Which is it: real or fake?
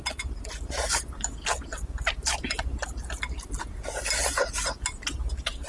real